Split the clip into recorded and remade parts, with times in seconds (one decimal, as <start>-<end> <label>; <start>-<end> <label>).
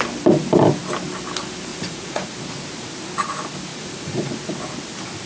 0.0-1.7 recorded; 1.7-2.3 remade; 2.3-3.7 recorded; 3.7-4.3 remade; 4.3-5.3 recorded